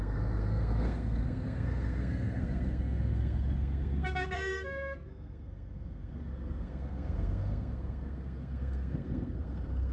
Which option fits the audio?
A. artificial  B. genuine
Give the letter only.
A